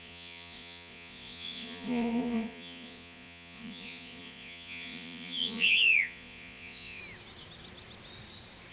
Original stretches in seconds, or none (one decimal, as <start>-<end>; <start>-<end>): 7.0-8.7